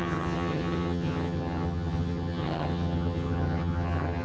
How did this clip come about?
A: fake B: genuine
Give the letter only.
A